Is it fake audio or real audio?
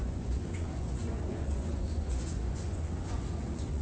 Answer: fake